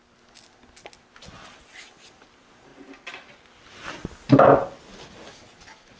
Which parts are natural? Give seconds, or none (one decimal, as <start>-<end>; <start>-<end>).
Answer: 0.0-6.0